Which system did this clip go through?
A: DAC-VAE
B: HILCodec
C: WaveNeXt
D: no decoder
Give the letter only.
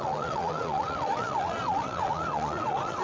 C